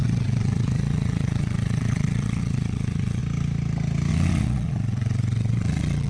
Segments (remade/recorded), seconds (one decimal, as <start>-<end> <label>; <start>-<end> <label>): 0.0-3.2 remade; 3.2-4.1 recorded; 4.1-6.1 remade